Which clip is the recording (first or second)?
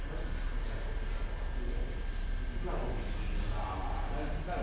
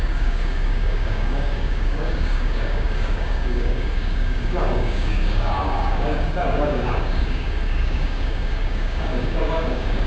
first